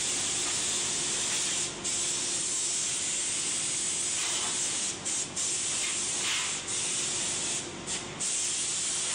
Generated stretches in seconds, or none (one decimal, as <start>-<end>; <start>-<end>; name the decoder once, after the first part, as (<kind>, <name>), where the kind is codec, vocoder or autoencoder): none